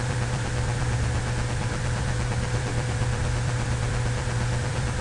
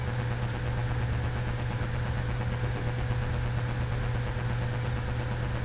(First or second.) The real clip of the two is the second